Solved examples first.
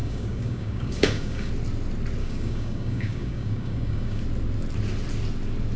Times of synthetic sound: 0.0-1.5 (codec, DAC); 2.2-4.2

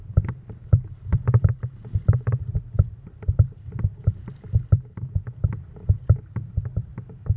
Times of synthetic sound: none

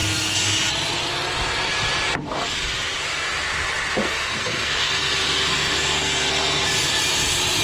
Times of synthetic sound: 4.0-5.1 (codec, SNAC); 5.5-6.6

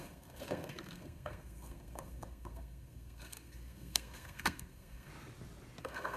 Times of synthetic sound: 0.0-5.1 (codec, SNAC); 5.8-6.2

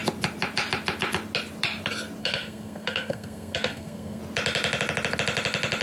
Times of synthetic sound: 2.2-4.2 (codec, SNAC)